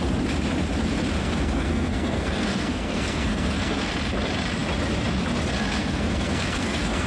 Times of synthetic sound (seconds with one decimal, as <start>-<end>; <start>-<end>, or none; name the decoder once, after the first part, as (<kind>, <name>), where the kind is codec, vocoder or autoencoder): 1.2-3.9 (codec, SNAC); 5.8-7.1